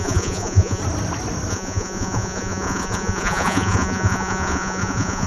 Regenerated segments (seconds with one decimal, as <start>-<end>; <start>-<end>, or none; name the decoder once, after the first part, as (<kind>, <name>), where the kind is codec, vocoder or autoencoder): 0.0-0.8 (vocoder, Vocos); 1.5-5.3